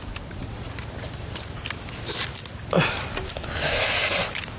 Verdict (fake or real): real